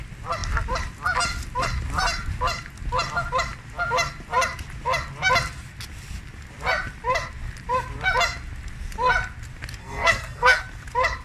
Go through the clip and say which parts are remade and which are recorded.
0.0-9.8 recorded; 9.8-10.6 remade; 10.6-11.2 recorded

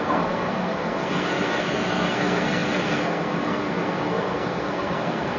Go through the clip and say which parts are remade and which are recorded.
0.0-5.4 remade

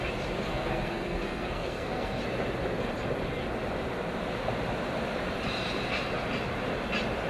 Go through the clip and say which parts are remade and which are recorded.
0.0-0.5 recorded; 0.5-2.2 remade; 2.2-7.3 recorded

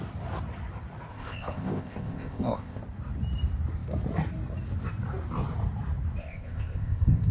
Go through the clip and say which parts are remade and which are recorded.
0.0-1.1 recorded; 1.1-2.8 remade; 2.8-6.2 recorded; 6.2-7.3 remade

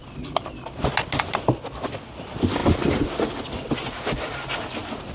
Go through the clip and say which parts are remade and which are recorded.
0.0-5.1 recorded

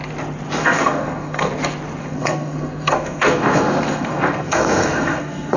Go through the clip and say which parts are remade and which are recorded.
0.0-0.6 recorded; 0.6-1.5 remade; 1.5-2.0 recorded; 2.0-5.6 remade